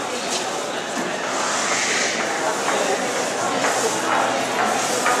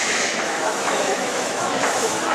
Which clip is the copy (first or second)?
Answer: second